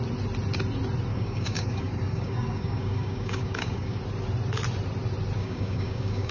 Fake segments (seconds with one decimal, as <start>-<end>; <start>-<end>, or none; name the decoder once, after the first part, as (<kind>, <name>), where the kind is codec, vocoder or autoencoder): 1.1-4.0 (codec, DAC); 5.4-6.3